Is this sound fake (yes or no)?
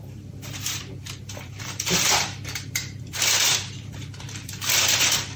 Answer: yes